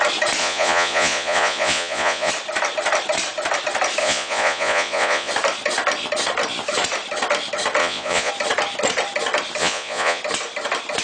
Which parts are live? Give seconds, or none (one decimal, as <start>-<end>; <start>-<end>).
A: 0.0-0.4; 2.3-4.0; 5.3-7.8; 8.3-9.6; 10.2-11.0